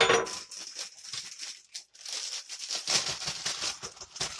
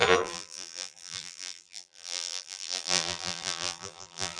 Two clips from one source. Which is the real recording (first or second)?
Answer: first